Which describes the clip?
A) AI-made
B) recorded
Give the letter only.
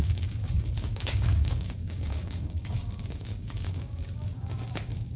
A